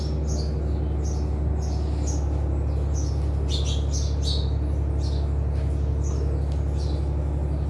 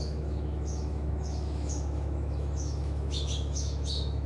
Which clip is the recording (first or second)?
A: first